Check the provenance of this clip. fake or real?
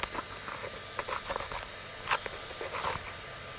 real